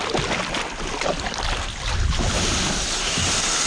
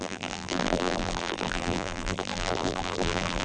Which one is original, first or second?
first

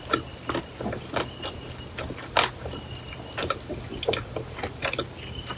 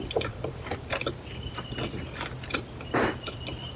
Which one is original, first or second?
first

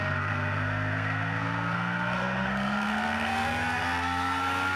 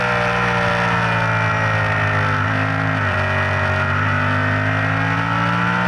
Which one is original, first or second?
second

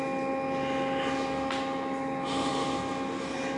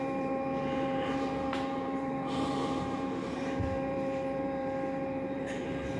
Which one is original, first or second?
first